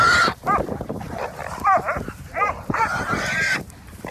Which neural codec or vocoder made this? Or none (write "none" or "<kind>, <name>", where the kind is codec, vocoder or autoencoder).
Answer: vocoder, BigVGAN v2